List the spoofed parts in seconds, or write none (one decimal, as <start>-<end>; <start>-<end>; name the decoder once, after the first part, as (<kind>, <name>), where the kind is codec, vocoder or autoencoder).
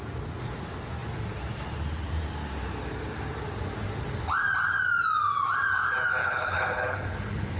6.2-7.6 (codec, HILCodec)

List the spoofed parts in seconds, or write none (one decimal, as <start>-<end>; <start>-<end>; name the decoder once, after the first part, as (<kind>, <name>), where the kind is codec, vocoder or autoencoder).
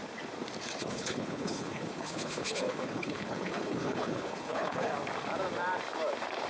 0.8-4.9 (codec, HILCodec)